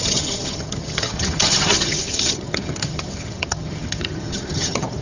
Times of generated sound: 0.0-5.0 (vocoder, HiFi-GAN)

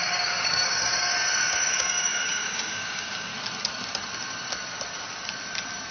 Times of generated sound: 0.0-1.1 (codec, DAC); 1.7-3.3